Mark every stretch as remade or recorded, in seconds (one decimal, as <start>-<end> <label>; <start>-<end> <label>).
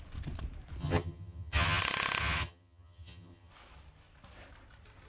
0.0-0.8 recorded; 0.8-1.8 remade; 1.8-2.2 recorded; 2.2-3.5 remade; 3.5-5.1 recorded